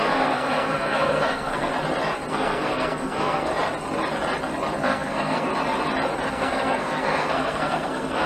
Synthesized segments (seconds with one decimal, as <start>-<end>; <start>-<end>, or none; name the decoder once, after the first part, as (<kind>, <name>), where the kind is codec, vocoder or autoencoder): 0.0-1.7 (codec, SNAC); 2.3-3.5; 4.8-5.5; 6.3-8.3